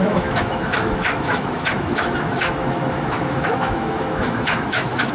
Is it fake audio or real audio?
fake